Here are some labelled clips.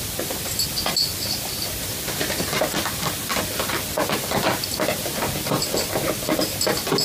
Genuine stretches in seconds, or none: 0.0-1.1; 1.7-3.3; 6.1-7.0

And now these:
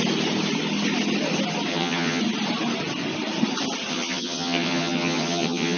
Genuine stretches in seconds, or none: 0.0-1.7; 2.2-3.9

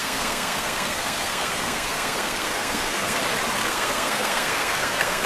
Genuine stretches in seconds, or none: 3.2-3.6

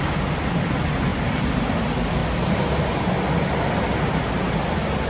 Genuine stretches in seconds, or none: 0.0-1.1; 1.7-5.1

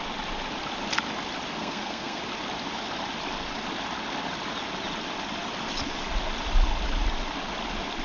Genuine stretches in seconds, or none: 0.0-1.6; 2.2-8.0

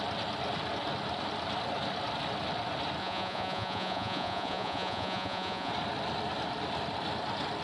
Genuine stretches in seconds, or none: 0.0-3.0; 5.7-7.6

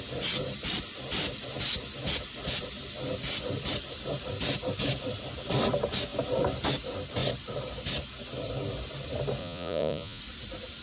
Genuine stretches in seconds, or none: 0.0-9.4; 10.2-10.8

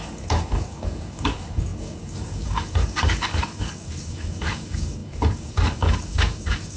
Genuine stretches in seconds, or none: none